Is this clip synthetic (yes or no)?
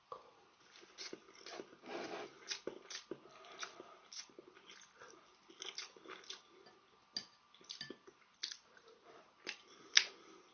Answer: no